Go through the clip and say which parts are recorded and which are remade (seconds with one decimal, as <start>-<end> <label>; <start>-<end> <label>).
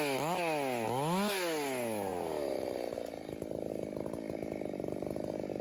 0.0-5.6 recorded